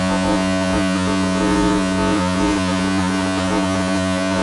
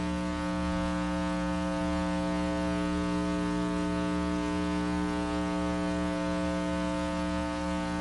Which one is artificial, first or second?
first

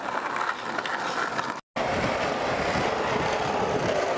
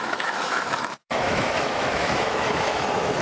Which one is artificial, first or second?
second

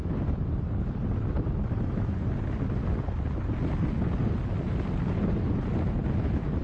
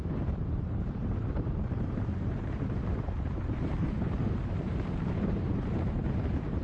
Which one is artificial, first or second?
second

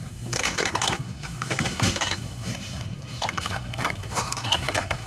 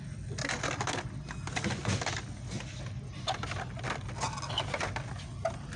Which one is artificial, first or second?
first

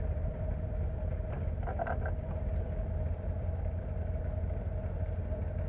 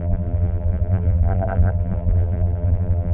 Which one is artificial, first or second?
second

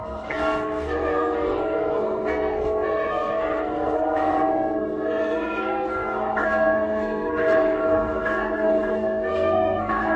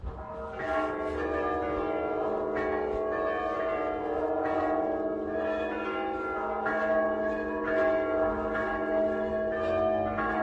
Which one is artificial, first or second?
first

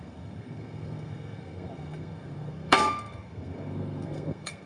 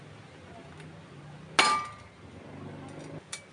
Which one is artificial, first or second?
first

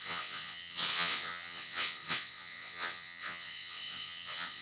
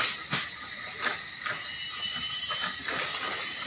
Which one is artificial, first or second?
first